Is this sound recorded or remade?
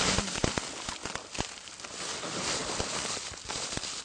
recorded